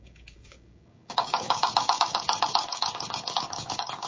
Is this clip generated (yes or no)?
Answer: yes